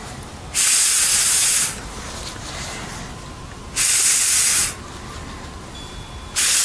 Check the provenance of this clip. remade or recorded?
recorded